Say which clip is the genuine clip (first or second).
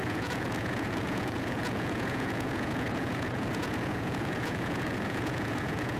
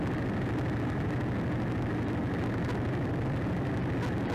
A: second